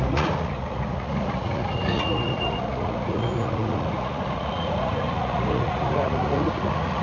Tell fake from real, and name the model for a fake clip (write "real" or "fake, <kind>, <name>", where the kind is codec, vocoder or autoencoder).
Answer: fake, vocoder, Vocos